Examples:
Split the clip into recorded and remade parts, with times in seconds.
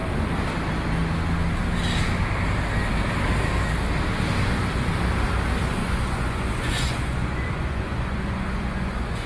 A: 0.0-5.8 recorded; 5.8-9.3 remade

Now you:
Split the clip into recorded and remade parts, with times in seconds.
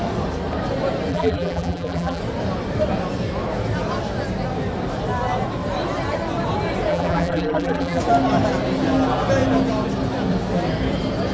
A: 0.0-1.1 recorded; 1.1-2.2 remade; 2.2-6.9 recorded; 6.9-8.0 remade; 8.0-11.3 recorded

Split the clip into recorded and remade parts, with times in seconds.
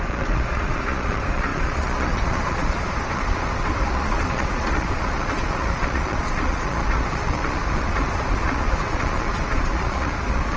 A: 0.0-10.6 remade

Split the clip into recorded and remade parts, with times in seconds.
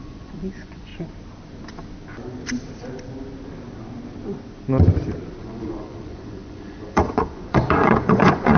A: 0.0-0.9 remade; 0.9-5.4 recorded; 5.4-8.6 remade